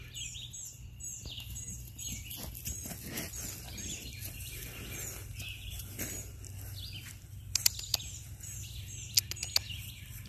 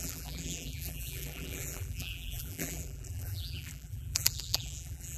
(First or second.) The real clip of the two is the first